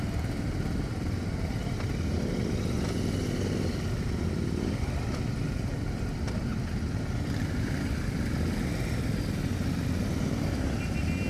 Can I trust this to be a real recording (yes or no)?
yes